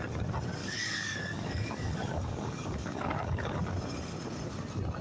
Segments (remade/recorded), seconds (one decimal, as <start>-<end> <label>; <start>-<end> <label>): 0.0-0.6 recorded; 0.6-3.6 remade; 3.6-5.0 recorded